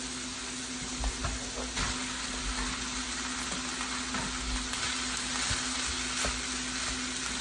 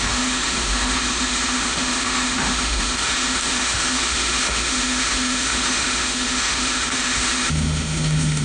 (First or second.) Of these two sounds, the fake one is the second